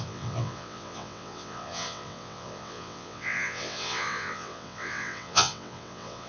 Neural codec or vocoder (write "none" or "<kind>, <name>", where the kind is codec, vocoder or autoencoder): vocoder, WaveNeXt